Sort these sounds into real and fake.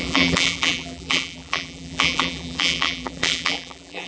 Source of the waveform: fake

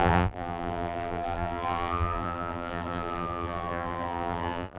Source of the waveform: fake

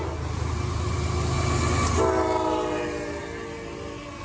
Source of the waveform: real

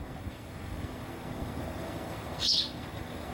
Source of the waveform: fake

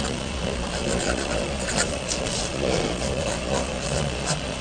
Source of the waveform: fake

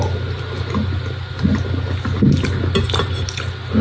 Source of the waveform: real